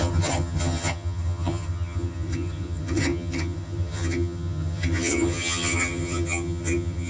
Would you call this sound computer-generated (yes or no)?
yes